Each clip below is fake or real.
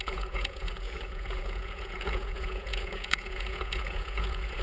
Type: fake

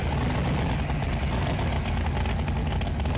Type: real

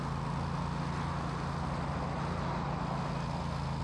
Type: real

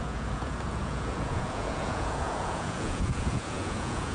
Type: fake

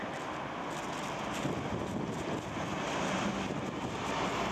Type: real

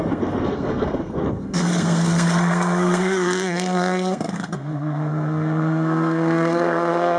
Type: fake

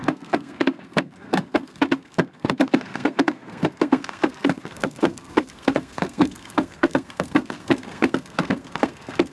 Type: fake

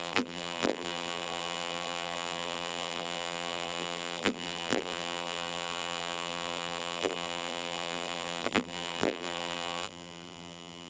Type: fake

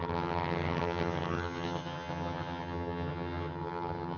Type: fake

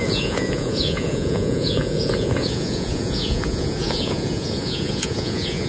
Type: fake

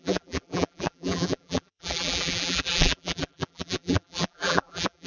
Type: fake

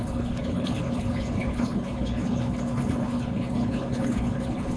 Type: fake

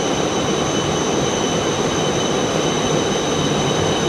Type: real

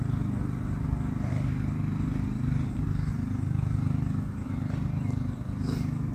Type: real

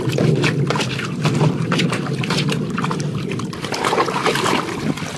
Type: real